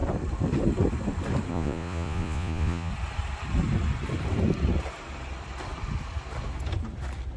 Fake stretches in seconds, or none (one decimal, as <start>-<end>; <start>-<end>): 1.5-2.9